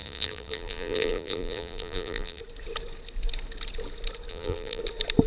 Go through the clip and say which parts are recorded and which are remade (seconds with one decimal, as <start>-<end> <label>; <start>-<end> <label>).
0.0-2.4 remade; 2.4-4.3 recorded; 4.3-4.8 remade; 4.8-5.3 recorded